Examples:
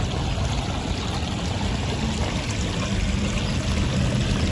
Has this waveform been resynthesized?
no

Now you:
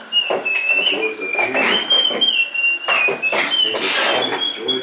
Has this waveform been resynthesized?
no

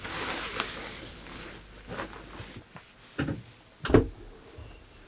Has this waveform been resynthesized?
no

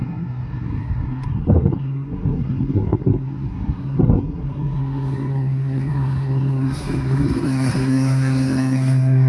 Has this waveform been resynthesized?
yes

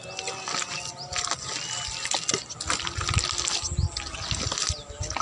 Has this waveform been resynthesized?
no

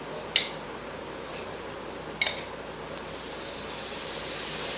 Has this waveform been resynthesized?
no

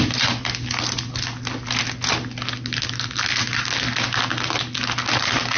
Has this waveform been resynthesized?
no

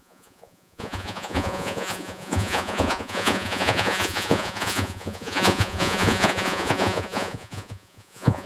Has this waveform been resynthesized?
yes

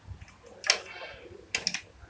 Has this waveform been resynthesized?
no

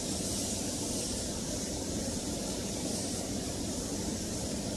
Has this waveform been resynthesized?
yes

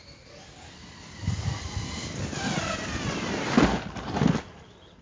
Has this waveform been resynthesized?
no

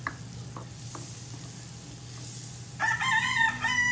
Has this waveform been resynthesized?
no